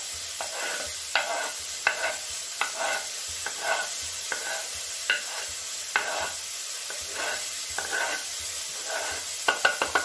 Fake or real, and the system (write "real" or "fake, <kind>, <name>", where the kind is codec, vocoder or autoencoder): real